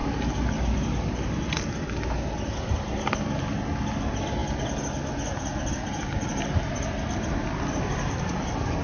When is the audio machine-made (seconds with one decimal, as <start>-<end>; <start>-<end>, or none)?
none